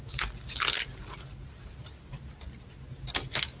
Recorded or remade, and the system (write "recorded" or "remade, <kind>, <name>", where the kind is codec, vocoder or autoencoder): recorded